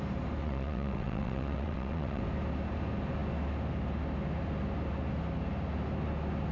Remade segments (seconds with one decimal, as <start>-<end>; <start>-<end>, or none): 0.4-2.2